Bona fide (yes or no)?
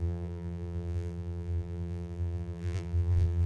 no